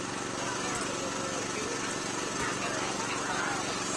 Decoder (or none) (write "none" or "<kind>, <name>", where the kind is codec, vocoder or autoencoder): none